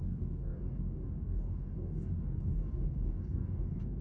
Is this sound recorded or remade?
remade